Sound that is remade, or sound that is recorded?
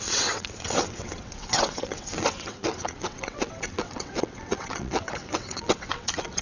remade